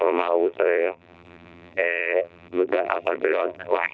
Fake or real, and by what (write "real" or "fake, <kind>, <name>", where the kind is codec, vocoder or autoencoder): fake, vocoder, BigVGAN v2